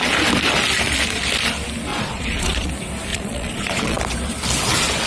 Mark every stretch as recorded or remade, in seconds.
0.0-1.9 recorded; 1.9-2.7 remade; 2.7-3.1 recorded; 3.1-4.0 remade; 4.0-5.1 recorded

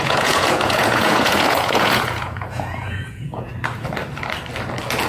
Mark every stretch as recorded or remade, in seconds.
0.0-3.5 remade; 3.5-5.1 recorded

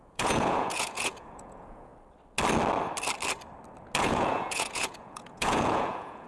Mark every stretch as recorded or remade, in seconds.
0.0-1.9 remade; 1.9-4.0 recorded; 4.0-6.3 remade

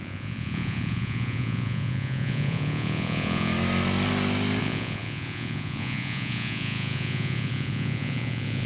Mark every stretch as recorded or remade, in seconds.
0.0-3.5 remade; 3.5-4.6 recorded; 4.6-8.7 remade